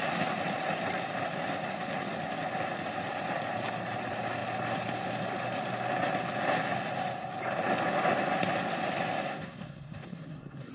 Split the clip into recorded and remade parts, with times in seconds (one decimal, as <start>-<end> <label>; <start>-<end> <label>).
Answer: 0.0-9.2 recorded; 9.2-10.7 remade